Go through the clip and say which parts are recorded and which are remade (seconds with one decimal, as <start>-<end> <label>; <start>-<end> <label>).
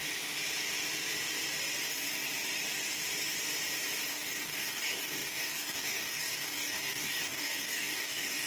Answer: 0.0-4.1 recorded; 4.1-8.5 remade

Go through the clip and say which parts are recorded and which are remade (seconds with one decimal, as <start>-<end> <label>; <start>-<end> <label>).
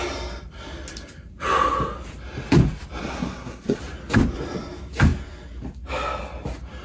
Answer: 0.0-3.0 recorded; 3.0-3.8 remade; 3.8-6.8 recorded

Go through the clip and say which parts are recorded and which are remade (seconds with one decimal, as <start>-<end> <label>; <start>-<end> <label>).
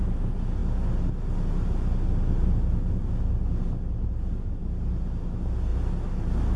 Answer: 0.0-6.6 recorded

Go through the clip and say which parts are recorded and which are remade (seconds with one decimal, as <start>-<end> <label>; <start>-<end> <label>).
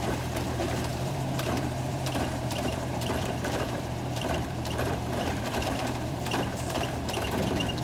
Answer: 0.0-7.8 remade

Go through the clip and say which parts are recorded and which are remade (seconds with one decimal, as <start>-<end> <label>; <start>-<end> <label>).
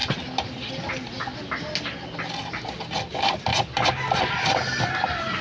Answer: 0.0-5.4 recorded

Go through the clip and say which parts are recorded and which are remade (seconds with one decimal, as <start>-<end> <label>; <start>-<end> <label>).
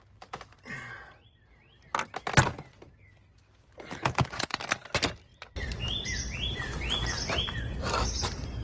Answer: 0.0-5.3 recorded; 5.3-7.6 remade; 7.6-8.6 recorded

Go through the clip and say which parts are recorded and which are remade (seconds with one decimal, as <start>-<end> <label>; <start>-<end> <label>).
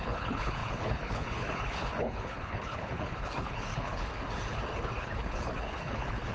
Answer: 0.0-4.1 remade; 4.1-5.0 recorded; 5.0-6.3 remade